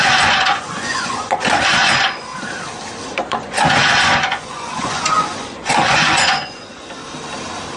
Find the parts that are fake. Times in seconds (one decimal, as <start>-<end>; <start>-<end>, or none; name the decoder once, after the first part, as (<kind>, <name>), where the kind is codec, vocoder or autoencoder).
0.0-2.3 (vocoder, Vocos); 3.3-7.0